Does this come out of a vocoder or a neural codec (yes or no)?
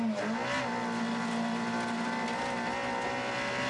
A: no